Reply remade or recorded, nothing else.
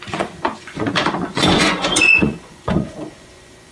remade